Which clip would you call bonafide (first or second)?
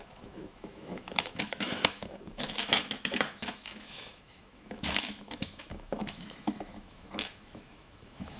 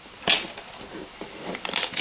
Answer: second